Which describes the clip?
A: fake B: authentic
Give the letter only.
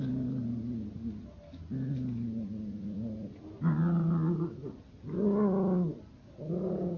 B